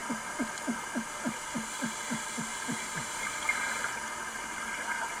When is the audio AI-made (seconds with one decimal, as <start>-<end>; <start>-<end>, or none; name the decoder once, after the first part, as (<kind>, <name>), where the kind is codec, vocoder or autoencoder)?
0.0-0.8 (vocoder, BigVGAN v2); 2.5-3.6